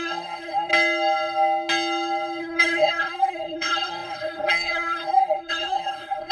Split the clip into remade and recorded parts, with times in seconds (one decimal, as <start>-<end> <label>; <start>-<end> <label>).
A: 0.0-0.7 remade; 0.7-2.4 recorded; 2.4-6.3 remade